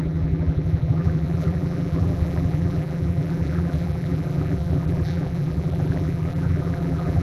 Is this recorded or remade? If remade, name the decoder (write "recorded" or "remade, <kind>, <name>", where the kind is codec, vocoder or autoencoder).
remade, vocoder, BigVGAN v2